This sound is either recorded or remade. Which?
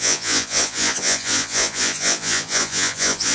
remade